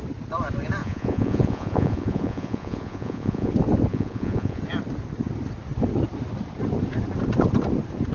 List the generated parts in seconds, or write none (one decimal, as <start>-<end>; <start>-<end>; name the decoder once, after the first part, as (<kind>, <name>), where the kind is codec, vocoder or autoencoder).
0.8-3.5 (vocoder, Vocos); 3.9-4.6